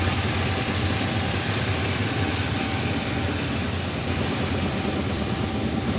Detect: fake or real real